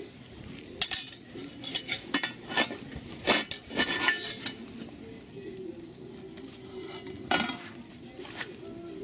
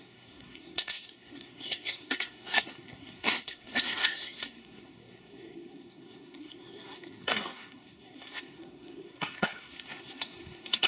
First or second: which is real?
first